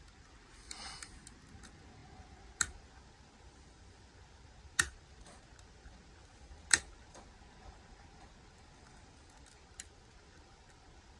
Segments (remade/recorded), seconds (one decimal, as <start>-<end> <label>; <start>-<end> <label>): 0.0-11.2 recorded